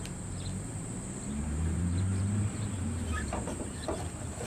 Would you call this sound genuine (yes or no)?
no